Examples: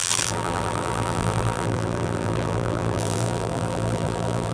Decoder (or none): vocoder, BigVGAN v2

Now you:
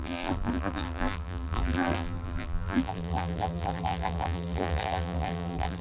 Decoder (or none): vocoder, BigVGAN v2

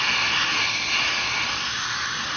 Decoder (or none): none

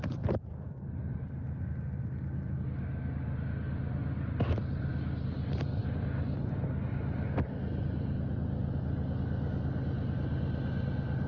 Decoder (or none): none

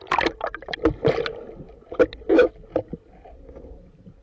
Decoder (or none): none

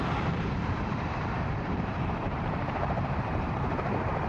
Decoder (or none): vocoder, BigVGAN v2